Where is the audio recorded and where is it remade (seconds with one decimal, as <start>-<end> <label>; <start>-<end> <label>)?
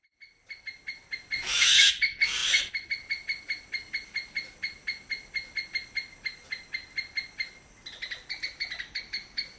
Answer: 0.0-1.4 recorded; 1.4-1.9 remade; 1.9-9.6 recorded